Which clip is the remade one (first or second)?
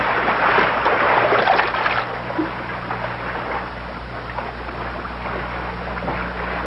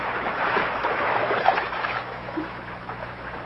second